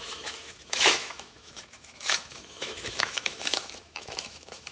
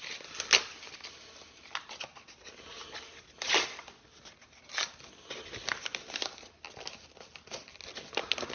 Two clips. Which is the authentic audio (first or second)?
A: second